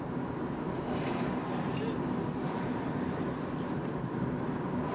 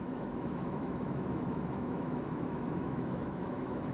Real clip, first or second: first